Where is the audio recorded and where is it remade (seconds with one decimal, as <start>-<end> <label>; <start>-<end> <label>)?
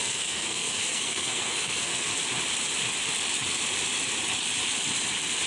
0.0-2.1 remade; 2.1-5.5 recorded